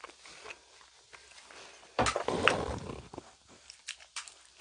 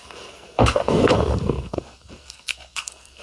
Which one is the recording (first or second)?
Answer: first